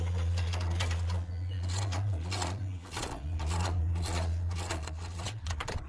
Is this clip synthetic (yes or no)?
yes